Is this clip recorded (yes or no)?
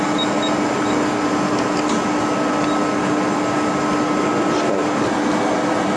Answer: yes